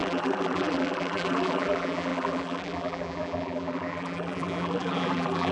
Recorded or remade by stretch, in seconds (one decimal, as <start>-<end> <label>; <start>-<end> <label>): 0.0-5.5 remade